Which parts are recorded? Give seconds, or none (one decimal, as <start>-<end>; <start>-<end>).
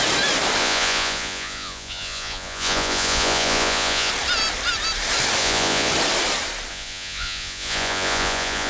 0.0-0.6; 4.1-5.4; 5.9-6.7